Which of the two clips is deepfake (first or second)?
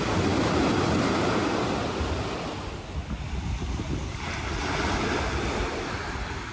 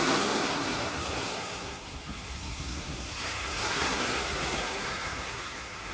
second